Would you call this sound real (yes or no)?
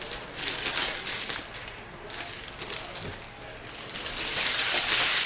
yes